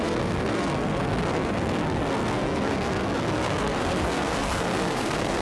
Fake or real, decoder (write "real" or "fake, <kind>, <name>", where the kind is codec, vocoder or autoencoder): fake, codec, SNAC